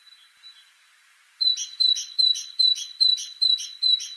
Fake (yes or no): no